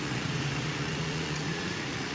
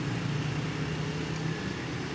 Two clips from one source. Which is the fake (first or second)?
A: first